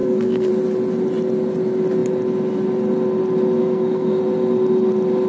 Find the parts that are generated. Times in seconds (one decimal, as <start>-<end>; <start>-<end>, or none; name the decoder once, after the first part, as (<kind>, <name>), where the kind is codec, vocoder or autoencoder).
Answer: 0.0-0.5 (codec, SNAC); 3.6-4.2